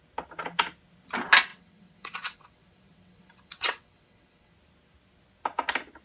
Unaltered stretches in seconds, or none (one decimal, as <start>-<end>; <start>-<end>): 0.0-1.5; 4.5-6.0